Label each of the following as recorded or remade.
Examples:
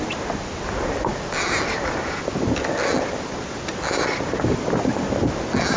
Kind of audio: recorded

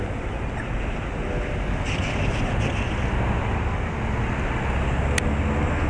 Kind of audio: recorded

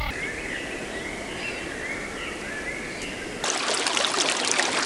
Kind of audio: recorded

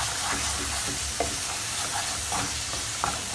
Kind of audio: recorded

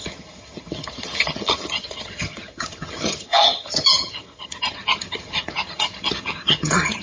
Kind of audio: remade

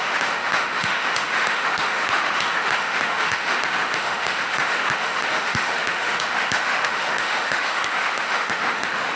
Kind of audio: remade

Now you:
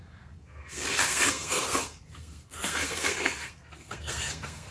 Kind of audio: remade